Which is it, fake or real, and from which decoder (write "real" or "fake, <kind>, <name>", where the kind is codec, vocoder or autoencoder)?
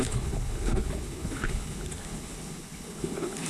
fake, codec, HILCodec